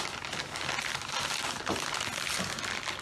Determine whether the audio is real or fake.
real